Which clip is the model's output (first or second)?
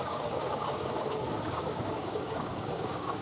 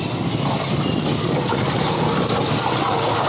first